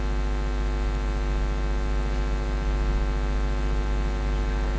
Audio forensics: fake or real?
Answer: real